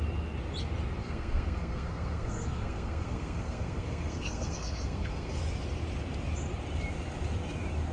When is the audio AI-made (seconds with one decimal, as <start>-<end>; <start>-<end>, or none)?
1.0-5.4